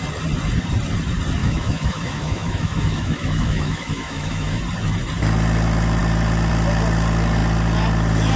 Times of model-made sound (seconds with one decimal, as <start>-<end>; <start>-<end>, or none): 1.4-4.6